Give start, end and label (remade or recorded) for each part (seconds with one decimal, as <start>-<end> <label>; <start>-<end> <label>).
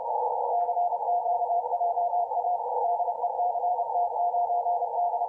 0.0-1.2 recorded; 1.2-4.3 remade; 4.3-5.3 recorded